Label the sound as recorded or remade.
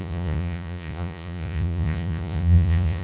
remade